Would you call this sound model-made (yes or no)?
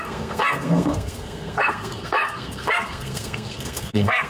yes